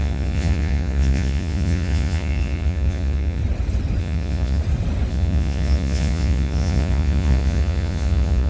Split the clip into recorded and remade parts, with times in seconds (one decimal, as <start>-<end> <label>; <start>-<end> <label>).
0.0-3.4 remade; 3.4-4.0 recorded; 4.0-4.6 remade; 4.6-5.1 recorded; 5.1-8.5 remade